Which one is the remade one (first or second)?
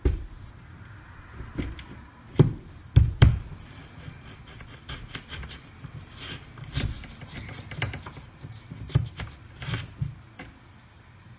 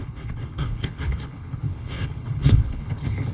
second